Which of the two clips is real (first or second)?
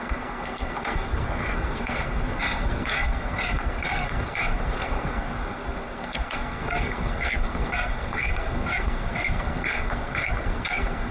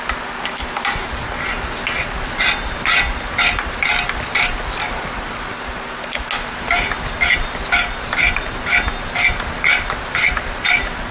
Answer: second